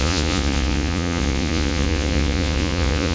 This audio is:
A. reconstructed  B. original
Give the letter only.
A